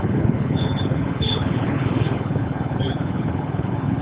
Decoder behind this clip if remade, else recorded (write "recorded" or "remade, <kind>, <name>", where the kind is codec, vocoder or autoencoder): remade, codec, HILCodec